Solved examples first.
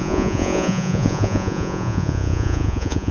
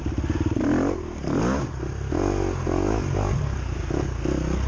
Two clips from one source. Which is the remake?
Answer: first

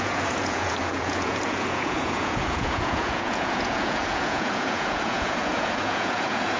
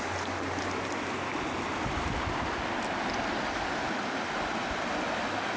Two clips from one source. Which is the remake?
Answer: first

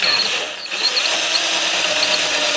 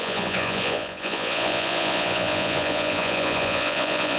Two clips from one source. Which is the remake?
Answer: second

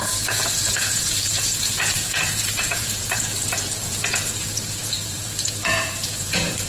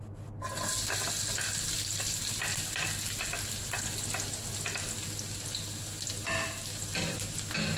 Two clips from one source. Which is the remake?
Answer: first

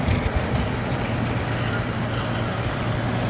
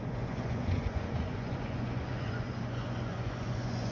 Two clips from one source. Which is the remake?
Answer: second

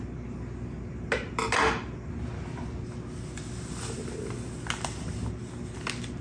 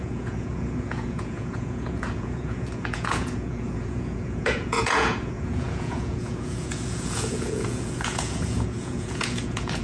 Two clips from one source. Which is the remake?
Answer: second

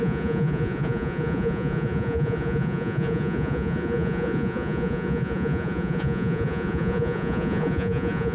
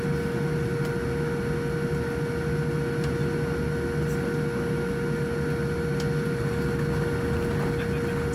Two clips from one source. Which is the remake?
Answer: first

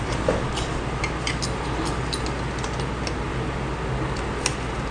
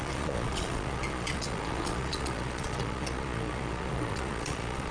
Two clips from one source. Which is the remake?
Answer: second